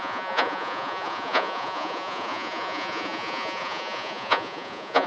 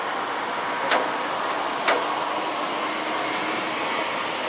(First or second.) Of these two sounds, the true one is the second